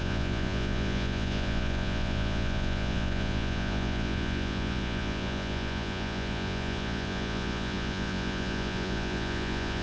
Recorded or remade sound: remade